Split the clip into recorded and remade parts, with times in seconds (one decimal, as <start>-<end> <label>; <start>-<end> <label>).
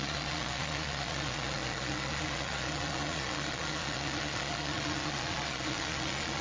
0.0-6.4 remade